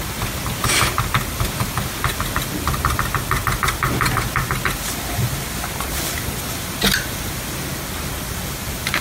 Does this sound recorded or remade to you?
recorded